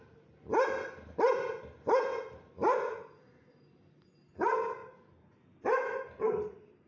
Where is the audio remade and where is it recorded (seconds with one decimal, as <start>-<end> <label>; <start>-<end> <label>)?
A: 0.0-6.9 recorded